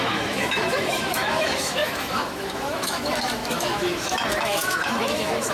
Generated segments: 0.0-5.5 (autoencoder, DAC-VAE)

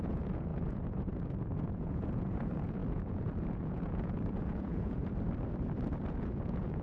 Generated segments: 0.0-5.0 (vocoder, Vocos); 6.1-6.8

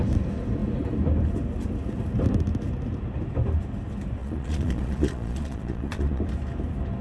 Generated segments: 4.2-6.2 (vocoder, Vocos)

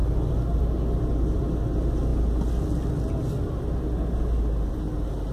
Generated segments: none

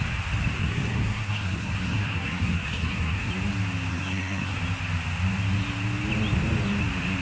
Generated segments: 0.6-3.3 (codec, SNAC); 3.9-4.6